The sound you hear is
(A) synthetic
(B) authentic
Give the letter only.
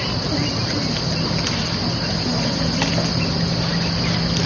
B